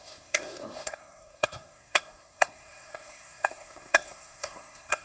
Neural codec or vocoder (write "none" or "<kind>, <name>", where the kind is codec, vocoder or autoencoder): codec, SNAC